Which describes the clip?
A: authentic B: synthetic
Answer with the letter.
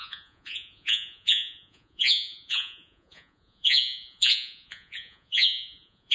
B